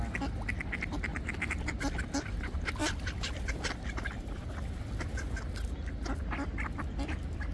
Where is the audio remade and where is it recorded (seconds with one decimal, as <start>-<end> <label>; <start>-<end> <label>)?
0.0-2.8 recorded; 2.8-4.9 remade; 4.9-7.5 recorded